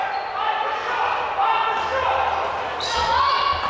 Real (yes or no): yes